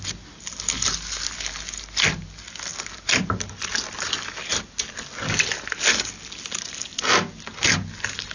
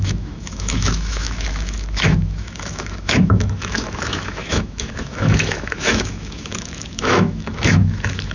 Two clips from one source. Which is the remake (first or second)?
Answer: second